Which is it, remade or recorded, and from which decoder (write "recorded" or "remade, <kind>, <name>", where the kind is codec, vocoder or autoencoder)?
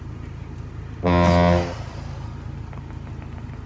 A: recorded